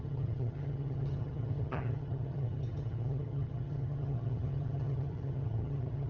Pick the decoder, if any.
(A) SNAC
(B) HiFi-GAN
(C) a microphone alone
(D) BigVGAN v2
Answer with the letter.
B